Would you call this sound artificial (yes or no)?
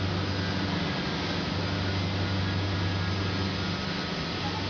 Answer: no